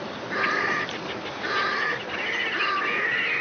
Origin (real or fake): real